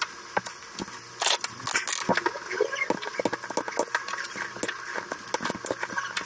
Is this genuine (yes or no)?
yes